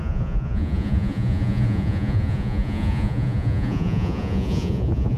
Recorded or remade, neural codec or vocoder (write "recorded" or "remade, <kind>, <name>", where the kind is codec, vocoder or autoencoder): remade, vocoder, Vocos